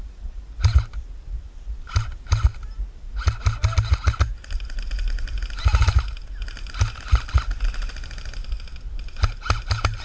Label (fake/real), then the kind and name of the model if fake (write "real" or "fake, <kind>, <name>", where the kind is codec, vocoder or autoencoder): real